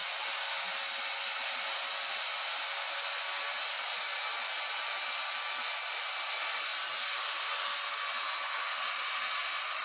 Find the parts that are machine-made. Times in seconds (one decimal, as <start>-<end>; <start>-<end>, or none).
none